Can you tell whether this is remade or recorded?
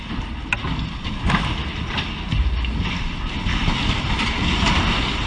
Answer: recorded